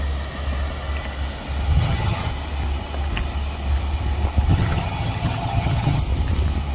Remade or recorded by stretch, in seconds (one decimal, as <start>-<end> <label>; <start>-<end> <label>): 0.0-1.8 recorded; 1.8-2.3 remade; 2.3-4.5 recorded; 4.5-6.0 remade; 6.0-6.7 recorded